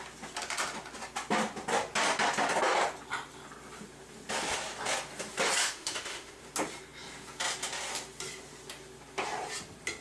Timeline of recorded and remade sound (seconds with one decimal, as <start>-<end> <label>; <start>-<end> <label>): 0.0-5.6 recorded; 5.6-6.4 remade; 6.4-10.0 recorded